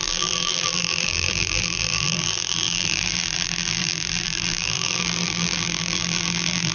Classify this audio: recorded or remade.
remade